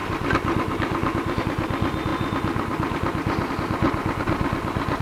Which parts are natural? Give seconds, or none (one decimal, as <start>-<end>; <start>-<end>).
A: 0.0-5.0